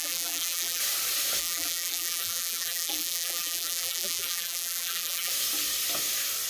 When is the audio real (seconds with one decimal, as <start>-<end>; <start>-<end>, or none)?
0.8-1.4; 5.3-6.5

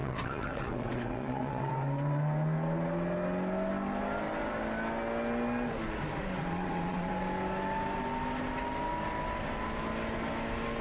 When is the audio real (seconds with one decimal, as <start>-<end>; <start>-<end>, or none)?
1.7-6.5; 7.1-10.8

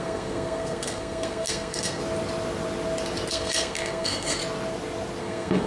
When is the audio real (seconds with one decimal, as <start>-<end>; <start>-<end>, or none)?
2.0-3.3; 4.4-5.2

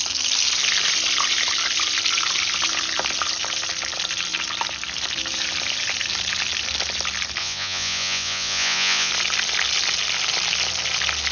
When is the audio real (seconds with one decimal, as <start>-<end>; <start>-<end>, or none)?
0.0-7.4; 9.1-11.3

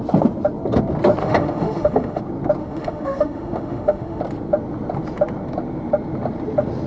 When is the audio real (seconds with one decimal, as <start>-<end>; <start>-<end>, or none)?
0.0-1.2; 2.2-2.6; 4.2-6.9

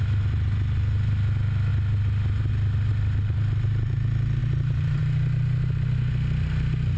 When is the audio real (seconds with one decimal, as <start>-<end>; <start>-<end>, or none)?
0.0-2.9; 3.9-4.4; 5.0-7.0

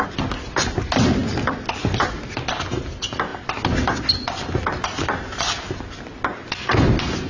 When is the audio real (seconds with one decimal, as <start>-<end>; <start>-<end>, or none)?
0.0-7.3